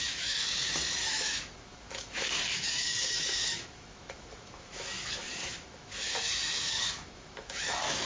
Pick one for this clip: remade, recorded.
remade